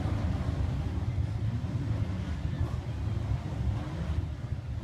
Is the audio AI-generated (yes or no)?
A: no